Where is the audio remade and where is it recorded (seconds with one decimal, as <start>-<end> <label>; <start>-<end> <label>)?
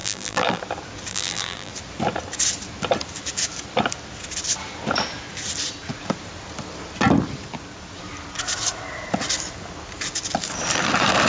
0.0-0.6 remade; 0.6-1.1 recorded; 1.1-1.7 remade; 1.7-11.3 recorded